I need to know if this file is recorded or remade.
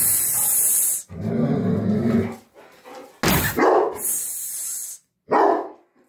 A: recorded